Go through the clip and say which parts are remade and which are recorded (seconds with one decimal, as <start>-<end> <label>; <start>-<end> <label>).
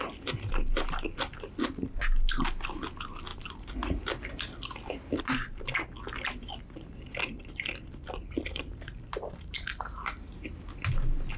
0.0-11.4 recorded